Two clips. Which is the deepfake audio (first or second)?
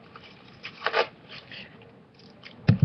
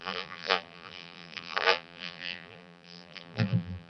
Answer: second